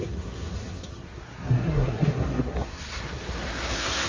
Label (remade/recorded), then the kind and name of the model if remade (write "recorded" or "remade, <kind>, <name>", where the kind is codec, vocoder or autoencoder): remade, codec, SNAC